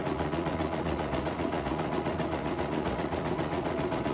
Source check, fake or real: fake